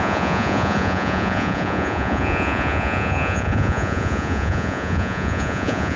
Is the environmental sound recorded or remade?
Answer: remade